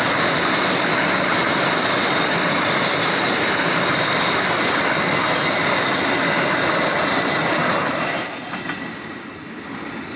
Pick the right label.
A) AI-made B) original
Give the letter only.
B